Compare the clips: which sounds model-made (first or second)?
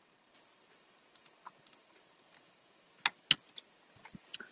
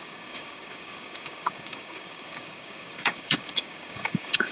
second